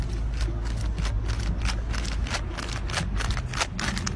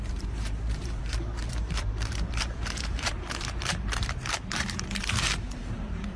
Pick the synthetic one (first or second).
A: second